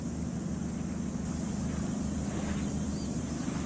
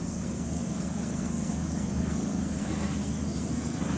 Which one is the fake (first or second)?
second